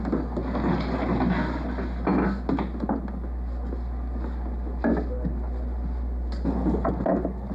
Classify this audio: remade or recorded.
recorded